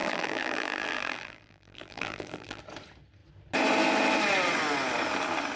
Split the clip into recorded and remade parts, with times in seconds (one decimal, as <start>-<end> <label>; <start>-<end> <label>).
0.0-2.6 remade; 2.6-5.6 recorded

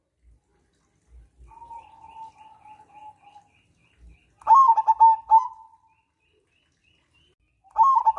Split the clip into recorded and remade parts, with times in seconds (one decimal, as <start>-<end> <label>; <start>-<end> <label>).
0.0-8.2 recorded

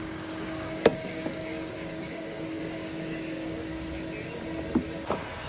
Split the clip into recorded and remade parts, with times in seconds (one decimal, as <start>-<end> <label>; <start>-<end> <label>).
0.0-3.7 remade; 3.7-5.5 recorded

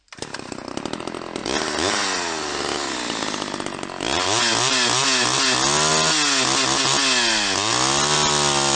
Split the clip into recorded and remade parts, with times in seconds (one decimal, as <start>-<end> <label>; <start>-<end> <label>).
0.0-8.8 recorded

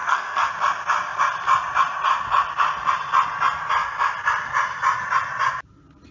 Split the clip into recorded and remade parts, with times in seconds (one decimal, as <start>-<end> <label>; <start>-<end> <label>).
0.0-0.5 remade; 0.5-6.1 recorded

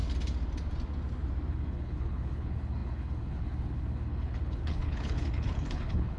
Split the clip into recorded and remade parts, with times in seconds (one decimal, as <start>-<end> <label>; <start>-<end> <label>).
0.0-1.5 recorded; 1.5-6.2 remade

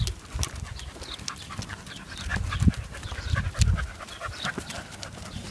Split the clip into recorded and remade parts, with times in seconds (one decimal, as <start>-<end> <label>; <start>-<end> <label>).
0.0-5.5 recorded